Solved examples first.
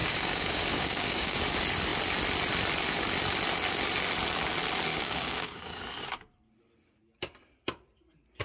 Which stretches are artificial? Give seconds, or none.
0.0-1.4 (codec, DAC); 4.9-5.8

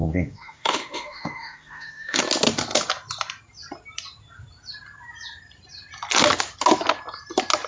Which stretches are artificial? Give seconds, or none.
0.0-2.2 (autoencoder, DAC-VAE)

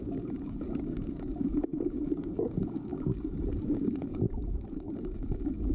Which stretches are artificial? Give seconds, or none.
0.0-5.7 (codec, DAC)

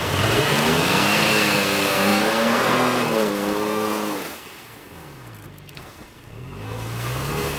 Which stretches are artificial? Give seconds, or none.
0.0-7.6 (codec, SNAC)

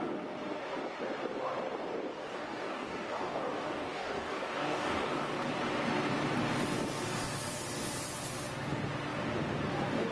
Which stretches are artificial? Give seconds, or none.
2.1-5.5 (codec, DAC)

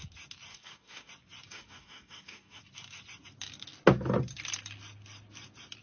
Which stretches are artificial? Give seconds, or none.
0.5-1.1 (codec, DAC); 1.5-2.6